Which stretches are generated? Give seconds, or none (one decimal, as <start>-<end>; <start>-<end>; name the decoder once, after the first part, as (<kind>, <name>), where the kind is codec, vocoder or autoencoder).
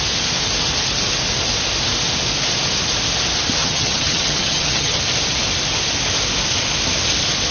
3.6-5.0 (vocoder, HiFi-GAN)